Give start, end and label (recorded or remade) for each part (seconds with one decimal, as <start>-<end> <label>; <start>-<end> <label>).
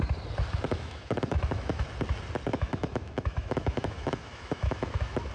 0.0-0.7 recorded; 0.7-1.8 remade; 1.8-2.5 recorded; 2.5-5.3 remade